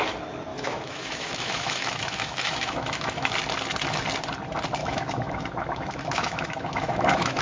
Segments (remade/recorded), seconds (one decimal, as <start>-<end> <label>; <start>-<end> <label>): 0.0-0.5 recorded; 0.5-3.3 remade; 3.3-4.8 recorded; 4.8-7.4 remade